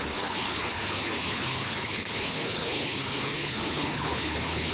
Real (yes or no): no